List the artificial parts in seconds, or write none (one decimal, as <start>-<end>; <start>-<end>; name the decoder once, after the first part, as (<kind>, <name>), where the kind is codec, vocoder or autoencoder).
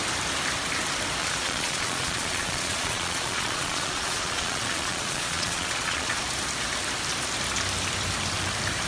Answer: 1.2-6.2 (vocoder, Vocos)